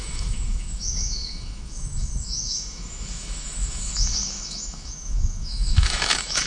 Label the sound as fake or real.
fake